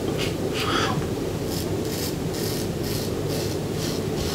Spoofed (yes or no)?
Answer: no